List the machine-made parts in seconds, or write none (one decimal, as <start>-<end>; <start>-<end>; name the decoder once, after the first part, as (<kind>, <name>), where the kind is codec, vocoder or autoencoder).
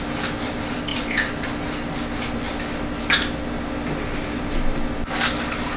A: none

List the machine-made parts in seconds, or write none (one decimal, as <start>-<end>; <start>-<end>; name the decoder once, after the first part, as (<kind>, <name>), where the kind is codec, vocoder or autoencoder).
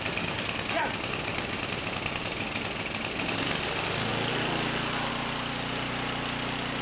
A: 1.3-2.6 (vocoder, BigVGAN v2); 4.1-5.1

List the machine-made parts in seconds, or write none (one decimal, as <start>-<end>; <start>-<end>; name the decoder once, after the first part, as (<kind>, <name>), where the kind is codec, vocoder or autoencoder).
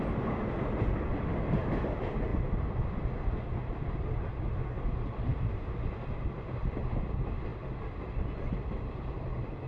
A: 0.0-2.3 (vocoder, BigVGAN v2); 3.8-5.3; 6.6-7.5; 8.4-9.7